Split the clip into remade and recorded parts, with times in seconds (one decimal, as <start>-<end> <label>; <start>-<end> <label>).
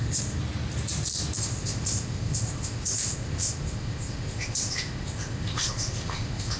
0.0-0.4 remade; 0.4-1.4 recorded; 1.4-6.6 remade